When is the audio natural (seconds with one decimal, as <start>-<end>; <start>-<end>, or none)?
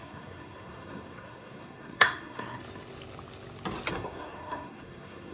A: 2.6-3.9